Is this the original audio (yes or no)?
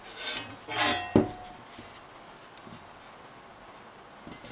yes